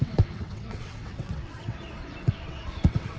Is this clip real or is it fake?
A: fake